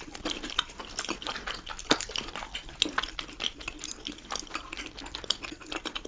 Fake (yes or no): no